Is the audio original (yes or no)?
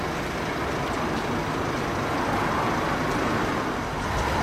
yes